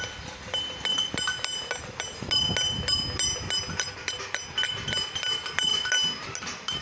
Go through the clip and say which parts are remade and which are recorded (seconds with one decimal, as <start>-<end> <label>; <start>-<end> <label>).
0.0-6.8 recorded